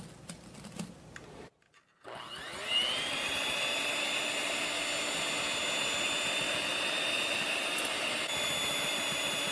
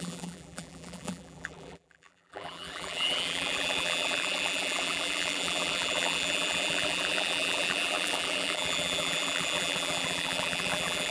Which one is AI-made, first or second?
second